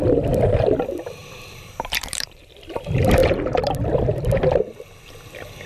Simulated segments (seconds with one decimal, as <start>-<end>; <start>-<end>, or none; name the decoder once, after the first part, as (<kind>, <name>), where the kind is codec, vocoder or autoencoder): 1.2-2.4 (vocoder, BigVGAN v2); 3.2-3.7